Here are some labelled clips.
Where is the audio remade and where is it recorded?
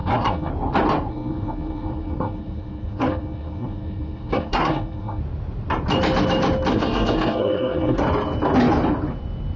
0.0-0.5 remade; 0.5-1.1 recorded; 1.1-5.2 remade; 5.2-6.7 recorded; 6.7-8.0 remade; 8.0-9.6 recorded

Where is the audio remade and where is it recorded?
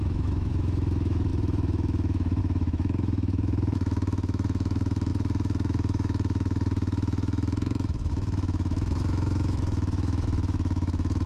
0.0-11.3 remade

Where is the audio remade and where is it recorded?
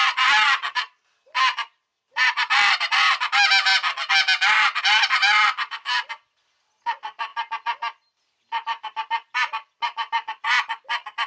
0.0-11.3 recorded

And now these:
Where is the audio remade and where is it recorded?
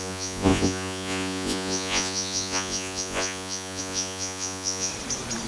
0.0-4.9 remade; 4.9-5.5 recorded